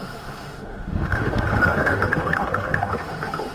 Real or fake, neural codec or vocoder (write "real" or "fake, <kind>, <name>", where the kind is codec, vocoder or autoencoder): fake, autoencoder, DAC-VAE